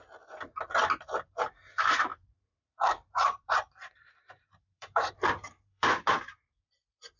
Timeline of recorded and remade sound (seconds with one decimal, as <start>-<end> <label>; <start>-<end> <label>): 0.0-2.1 recorded; 2.1-6.4 remade; 6.4-7.2 recorded